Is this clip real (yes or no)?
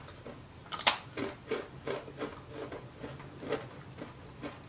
yes